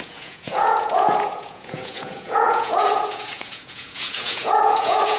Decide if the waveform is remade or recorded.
remade